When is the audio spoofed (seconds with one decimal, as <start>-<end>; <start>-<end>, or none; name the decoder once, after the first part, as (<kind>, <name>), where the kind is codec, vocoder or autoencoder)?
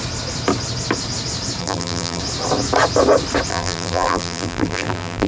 1.6-2.2 (vocoder, BigVGAN v2); 3.5-5.3